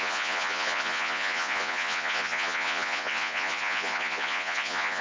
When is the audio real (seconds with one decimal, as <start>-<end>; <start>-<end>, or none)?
none